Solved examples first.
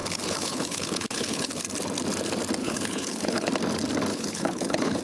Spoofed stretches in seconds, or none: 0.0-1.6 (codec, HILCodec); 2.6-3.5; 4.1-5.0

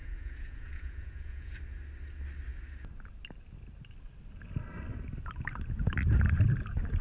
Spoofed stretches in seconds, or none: 0.0-1.5 (vocoder, Vocos)

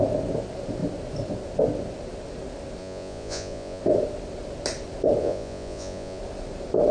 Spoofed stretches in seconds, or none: 2.8-3.8 (vocoder, Vocos); 5.2-6.2

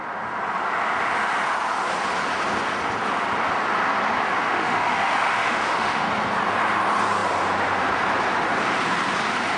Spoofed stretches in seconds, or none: 4.5-6.1 (autoencoder, DAC-VAE)

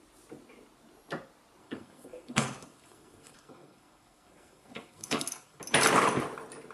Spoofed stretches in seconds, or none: 1.6-5.6 (codec, SNAC)

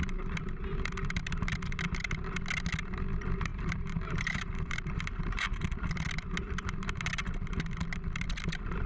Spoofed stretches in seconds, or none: 3.5-5.6 (vocoder, BigVGAN v2)

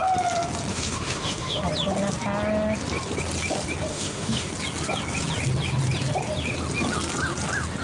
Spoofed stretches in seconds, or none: 0.7-1.6 (autoencoder, DAC-VAE); 3.9-4.5